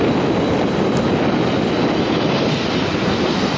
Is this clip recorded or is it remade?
recorded